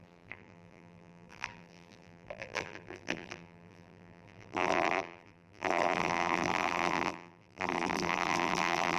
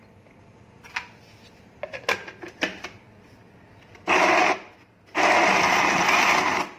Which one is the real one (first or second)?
second